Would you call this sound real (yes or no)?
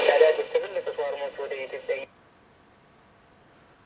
yes